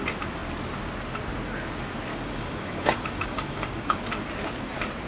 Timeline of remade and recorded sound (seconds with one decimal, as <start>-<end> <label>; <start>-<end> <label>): 0.0-2.1 recorded; 2.1-4.0 remade; 4.0-5.1 recorded